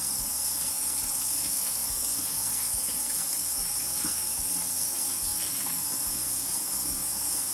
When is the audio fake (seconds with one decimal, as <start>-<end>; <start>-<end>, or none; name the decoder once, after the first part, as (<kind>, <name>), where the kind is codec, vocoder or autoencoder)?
0.0-7.5 (codec, SNAC)